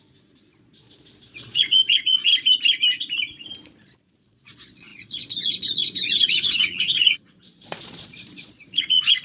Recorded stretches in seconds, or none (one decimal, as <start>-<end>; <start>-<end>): 2.3-4.2